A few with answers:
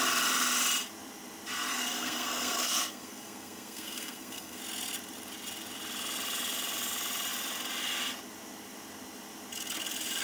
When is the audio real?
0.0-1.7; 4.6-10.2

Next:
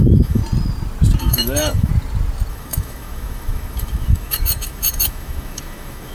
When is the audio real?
0.4-1.2; 1.9-2.5

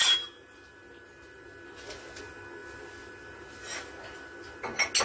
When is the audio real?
0.0-5.0

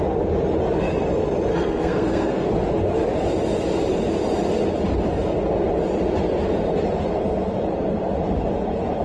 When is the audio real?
0.0-1.5; 2.5-9.0